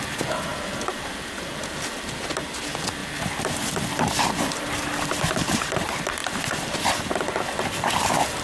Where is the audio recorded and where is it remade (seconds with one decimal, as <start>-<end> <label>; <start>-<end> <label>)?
0.0-0.5 recorded; 0.5-2.1 remade; 2.1-3.0 recorded; 3.0-5.4 remade; 5.4-6.2 recorded; 6.2-6.9 remade; 6.9-8.4 recorded

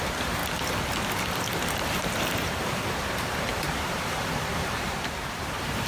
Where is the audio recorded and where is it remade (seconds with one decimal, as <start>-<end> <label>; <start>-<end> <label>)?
0.0-0.4 remade; 0.4-1.9 recorded; 1.9-5.9 remade

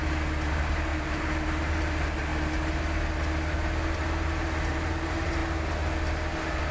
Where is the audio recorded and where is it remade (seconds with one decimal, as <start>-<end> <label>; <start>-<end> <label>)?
0.0-0.5 recorded; 0.5-2.3 remade; 2.3-4.7 recorded; 4.7-5.4 remade; 5.4-6.7 recorded

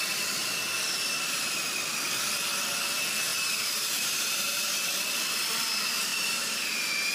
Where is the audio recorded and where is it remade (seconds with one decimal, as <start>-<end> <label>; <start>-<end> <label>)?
0.0-3.3 recorded; 3.3-4.6 remade; 4.6-6.1 recorded; 6.1-6.6 remade; 6.6-7.1 recorded

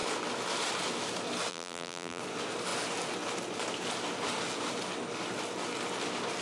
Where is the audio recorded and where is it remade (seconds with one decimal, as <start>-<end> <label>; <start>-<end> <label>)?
0.0-1.5 recorded; 1.5-2.2 remade; 2.2-6.4 recorded

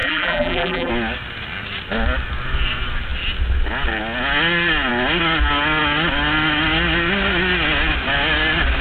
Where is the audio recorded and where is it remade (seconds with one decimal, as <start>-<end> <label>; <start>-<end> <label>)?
0.0-0.9 remade; 0.9-8.8 recorded